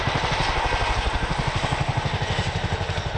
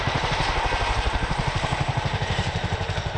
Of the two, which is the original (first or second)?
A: first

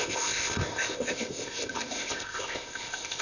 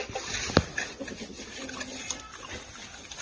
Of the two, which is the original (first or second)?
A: second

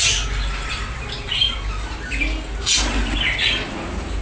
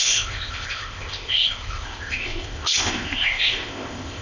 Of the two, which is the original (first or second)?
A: first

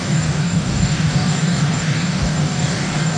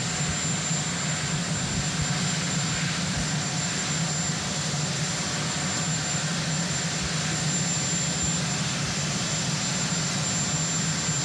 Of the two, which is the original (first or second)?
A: second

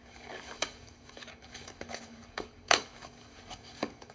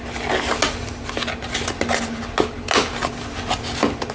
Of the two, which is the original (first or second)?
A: second